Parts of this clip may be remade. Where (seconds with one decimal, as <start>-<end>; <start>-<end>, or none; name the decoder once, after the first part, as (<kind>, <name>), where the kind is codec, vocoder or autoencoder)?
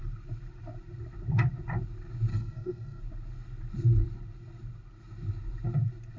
2.3-3.0 (codec, SNAC)